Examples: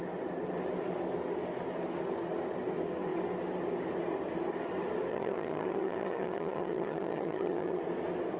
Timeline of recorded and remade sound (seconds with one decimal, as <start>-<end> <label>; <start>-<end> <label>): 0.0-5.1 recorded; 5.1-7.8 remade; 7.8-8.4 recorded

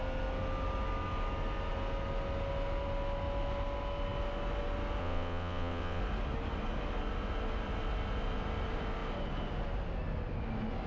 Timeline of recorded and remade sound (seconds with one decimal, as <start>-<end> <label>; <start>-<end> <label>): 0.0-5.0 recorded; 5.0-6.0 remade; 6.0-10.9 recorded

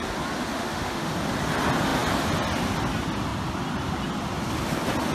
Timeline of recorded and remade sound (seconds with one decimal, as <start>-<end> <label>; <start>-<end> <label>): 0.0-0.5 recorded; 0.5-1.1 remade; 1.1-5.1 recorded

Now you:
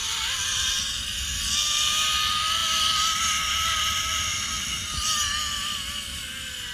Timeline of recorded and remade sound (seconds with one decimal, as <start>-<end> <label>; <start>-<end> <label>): 0.0-0.7 remade; 0.7-6.7 recorded